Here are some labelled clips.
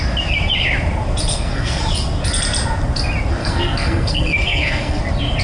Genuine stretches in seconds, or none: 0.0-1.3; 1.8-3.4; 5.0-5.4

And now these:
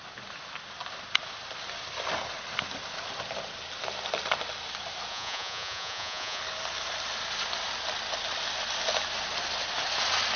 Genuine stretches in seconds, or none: 0.0-5.1; 6.4-10.4

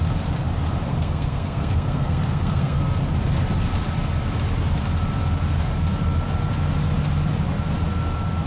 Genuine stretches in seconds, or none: 0.0-0.9; 2.8-8.5